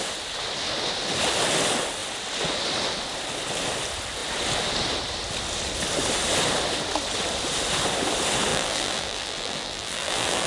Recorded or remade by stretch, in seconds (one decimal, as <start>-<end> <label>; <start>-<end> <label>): 0.0-8.5 recorded; 8.5-10.5 remade